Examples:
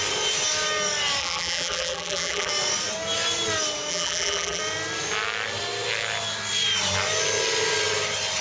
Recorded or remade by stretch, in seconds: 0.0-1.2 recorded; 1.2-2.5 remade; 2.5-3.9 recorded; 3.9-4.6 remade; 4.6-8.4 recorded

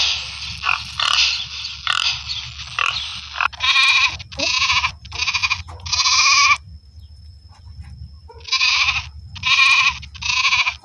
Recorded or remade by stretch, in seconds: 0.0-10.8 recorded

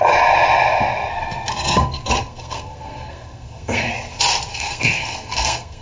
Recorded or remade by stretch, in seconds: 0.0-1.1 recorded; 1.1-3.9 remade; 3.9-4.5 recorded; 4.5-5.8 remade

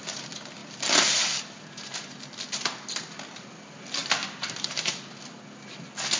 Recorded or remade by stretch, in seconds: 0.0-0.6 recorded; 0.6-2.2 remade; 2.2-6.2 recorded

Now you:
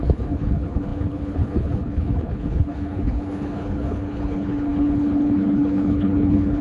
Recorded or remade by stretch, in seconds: 0.0-6.6 remade

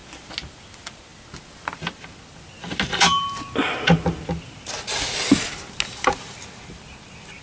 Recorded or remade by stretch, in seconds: 0.0-7.4 recorded